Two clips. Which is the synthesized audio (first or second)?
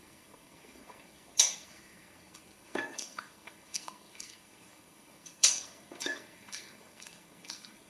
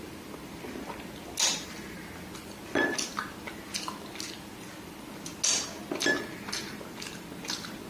first